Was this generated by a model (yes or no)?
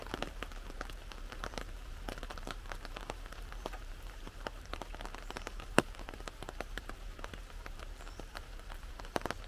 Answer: yes